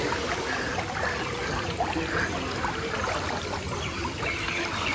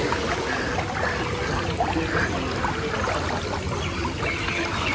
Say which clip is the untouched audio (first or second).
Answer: second